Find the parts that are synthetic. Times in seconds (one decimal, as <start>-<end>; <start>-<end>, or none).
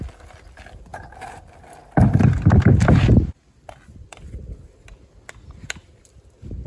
none